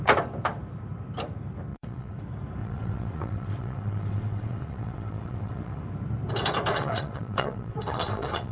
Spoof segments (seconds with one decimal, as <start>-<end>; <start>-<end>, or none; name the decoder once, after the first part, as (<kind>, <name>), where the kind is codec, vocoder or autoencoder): 1.7-2.2 (vocoder, WaveNeXt); 2.6-5.8; 6.7-8.5